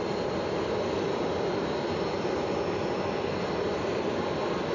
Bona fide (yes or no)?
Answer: yes